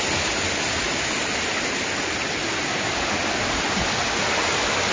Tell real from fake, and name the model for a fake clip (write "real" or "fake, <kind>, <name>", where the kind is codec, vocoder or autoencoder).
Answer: real